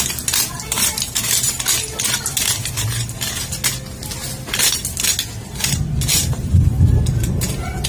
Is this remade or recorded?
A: recorded